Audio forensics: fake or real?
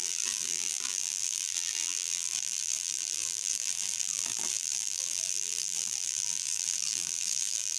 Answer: fake